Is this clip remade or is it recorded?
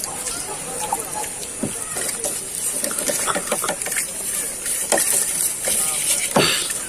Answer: recorded